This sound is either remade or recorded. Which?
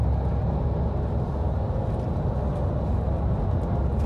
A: recorded